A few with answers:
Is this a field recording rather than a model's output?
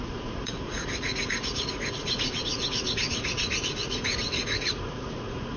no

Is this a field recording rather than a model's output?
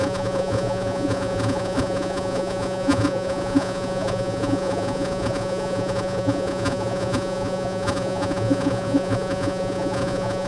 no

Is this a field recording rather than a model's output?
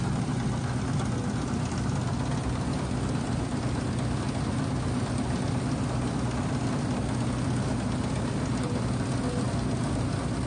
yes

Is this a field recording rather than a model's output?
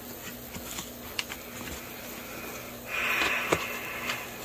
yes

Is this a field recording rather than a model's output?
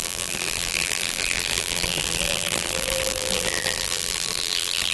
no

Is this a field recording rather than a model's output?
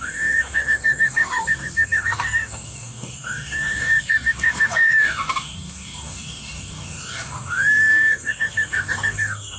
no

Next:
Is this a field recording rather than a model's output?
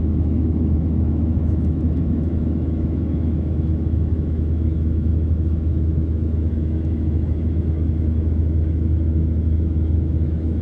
no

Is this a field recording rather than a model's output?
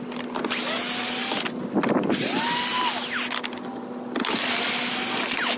yes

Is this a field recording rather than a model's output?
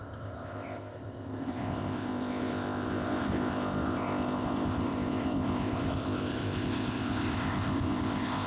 no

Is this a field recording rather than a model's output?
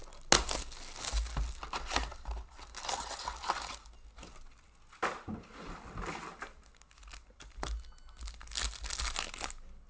yes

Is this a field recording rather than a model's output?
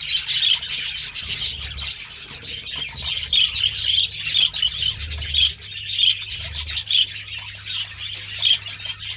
yes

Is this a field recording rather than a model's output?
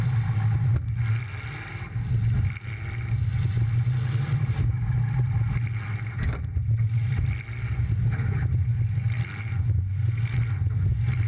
yes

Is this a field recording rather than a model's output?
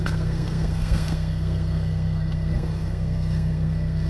no